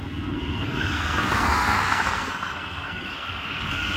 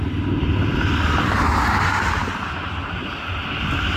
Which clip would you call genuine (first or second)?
second